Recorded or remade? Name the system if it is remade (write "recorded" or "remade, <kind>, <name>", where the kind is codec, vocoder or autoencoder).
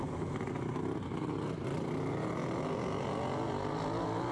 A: recorded